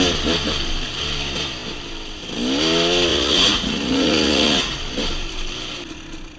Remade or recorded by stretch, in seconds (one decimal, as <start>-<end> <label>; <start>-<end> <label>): 0.0-3.1 recorded; 3.1-4.8 remade; 4.8-6.4 recorded